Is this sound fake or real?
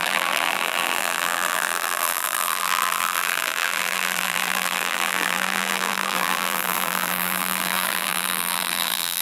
fake